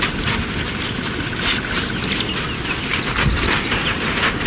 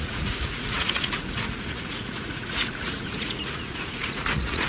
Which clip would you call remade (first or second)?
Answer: second